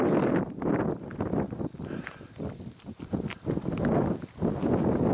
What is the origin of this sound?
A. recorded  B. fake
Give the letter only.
A